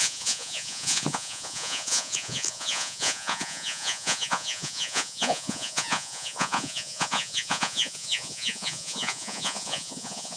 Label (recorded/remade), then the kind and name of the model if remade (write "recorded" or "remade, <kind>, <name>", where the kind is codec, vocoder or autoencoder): remade, vocoder, Vocos